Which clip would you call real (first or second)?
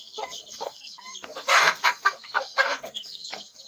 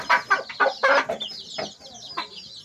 second